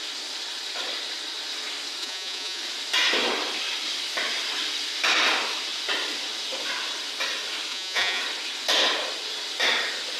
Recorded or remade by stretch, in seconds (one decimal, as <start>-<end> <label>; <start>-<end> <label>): 0.0-2.0 recorded; 2.0-2.6 remade; 2.6-7.7 recorded; 7.7-8.2 remade; 8.2-10.2 recorded